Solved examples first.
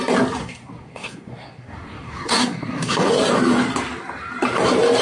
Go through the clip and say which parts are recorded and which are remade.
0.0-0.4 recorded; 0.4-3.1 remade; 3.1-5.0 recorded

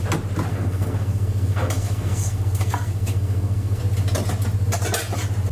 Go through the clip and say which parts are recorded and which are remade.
0.0-0.5 recorded; 0.5-3.8 remade; 3.8-5.5 recorded

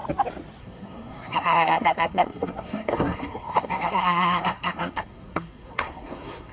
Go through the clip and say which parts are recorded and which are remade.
0.0-0.6 recorded; 0.6-6.5 remade

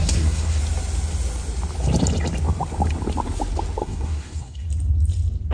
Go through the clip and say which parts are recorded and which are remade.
0.0-0.6 remade; 0.6-3.8 recorded; 3.8-4.7 remade; 4.7-5.5 recorded

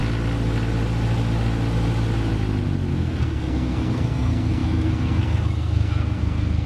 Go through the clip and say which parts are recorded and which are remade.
0.0-2.9 recorded; 2.9-6.7 remade

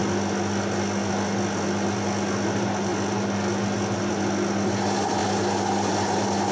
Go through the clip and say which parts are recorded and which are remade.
0.0-6.5 recorded